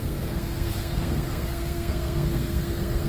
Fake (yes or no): yes